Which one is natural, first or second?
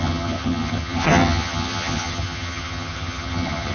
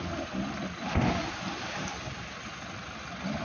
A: second